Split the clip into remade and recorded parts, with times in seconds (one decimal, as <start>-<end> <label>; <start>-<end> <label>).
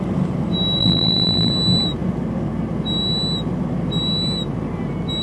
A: 0.0-0.8 recorded; 0.8-1.5 remade; 1.5-5.2 recorded